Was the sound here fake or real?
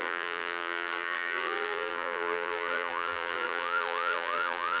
fake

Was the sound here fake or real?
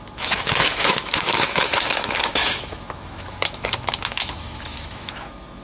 fake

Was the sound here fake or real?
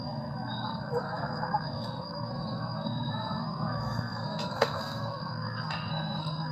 fake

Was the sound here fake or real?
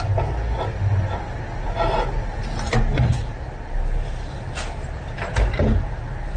real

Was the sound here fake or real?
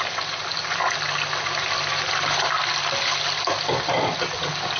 real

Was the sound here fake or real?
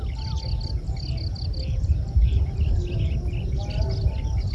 real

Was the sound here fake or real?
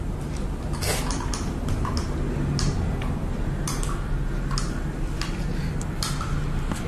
real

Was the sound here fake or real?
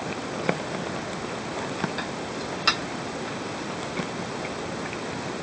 real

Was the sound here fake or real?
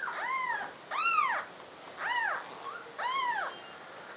real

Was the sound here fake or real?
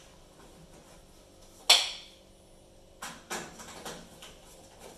real